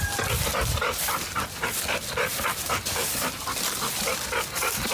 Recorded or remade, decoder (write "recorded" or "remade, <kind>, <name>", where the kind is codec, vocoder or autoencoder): recorded